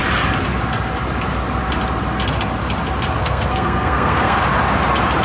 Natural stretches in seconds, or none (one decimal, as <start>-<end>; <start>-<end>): 0.0-3.2; 4.4-5.2